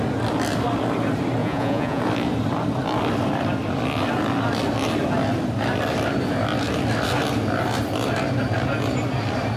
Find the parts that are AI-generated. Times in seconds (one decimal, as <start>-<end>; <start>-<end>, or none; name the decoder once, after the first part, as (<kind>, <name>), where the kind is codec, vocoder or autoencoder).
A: 1.4-2.0 (vocoder, Vocos)